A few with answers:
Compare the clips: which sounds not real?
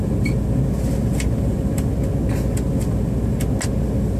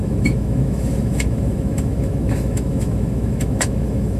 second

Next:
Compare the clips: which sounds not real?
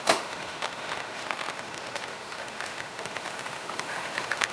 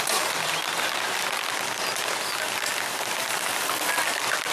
first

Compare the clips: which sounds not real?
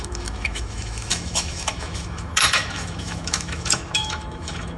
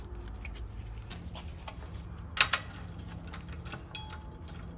first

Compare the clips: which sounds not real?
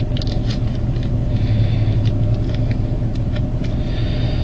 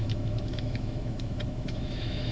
second